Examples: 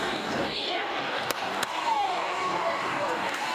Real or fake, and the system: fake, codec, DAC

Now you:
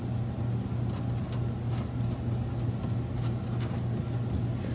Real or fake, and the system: real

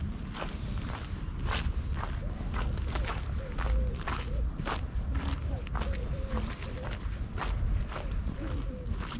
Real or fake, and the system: real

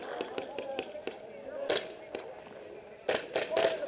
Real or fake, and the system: real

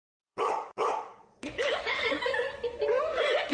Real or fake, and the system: fake, codec, DAC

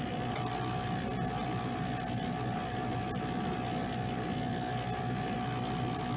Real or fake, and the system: real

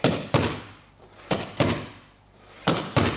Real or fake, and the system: real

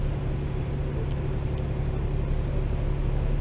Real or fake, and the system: real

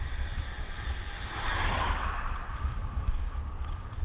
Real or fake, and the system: real